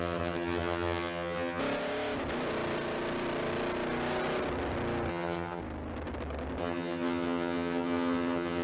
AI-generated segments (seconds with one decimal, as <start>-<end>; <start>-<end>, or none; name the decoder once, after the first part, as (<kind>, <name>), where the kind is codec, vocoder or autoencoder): 0.0-1.6 (vocoder, HiFi-GAN); 5.1-5.6; 6.6-8.6